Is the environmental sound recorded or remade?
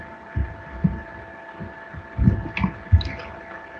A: recorded